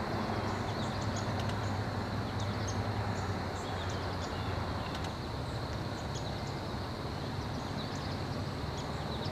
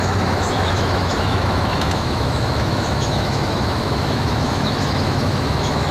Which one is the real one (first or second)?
first